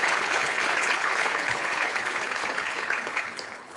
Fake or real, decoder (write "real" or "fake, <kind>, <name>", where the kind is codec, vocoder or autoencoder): fake, codec, HILCodec